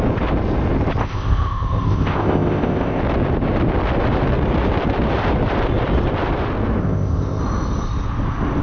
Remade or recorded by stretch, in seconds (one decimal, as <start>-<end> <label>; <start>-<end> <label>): 0.0-1.0 recorded; 1.0-3.0 remade; 3.0-6.8 recorded; 6.8-7.4 remade; 7.4-8.6 recorded